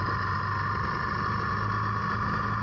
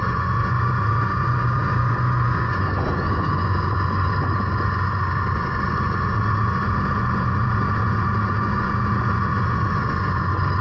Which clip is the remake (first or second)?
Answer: second